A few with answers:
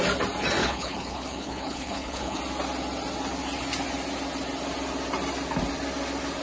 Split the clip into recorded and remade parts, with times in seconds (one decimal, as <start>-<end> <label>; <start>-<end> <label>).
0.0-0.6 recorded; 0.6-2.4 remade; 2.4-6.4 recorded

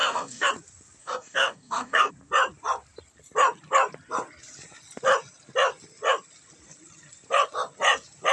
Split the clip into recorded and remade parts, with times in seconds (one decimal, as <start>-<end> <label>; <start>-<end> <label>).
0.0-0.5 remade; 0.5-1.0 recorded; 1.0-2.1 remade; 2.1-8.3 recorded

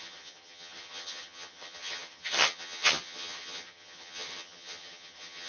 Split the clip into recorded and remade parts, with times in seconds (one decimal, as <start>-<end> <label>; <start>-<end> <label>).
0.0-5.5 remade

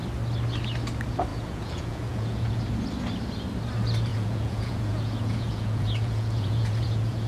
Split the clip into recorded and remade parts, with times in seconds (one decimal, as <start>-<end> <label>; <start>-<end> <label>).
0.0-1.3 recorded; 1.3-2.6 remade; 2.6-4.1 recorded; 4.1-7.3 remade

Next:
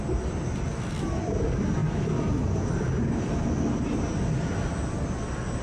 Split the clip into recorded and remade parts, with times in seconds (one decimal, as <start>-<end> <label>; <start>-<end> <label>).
0.0-5.6 recorded

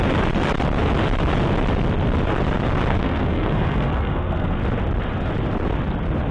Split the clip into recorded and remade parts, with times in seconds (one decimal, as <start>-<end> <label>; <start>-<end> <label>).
0.0-2.9 recorded; 2.9-4.6 remade; 4.6-6.3 recorded